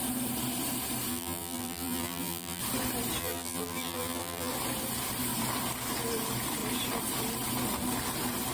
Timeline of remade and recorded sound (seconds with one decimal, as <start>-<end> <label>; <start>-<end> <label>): 0.0-1.1 recorded; 1.1-2.6 remade; 2.6-3.2 recorded; 3.2-4.5 remade; 4.5-8.5 recorded